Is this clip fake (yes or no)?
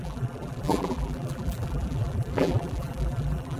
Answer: yes